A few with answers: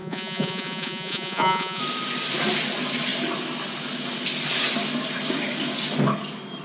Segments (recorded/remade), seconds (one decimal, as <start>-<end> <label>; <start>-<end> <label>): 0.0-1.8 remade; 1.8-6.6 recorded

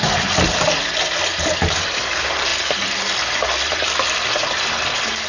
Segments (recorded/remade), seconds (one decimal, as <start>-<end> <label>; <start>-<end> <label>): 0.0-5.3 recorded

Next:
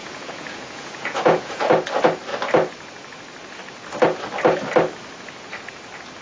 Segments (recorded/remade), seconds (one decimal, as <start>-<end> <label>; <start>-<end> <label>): 0.0-1.7 remade; 1.7-6.2 recorded